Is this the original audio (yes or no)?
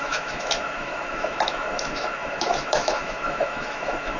no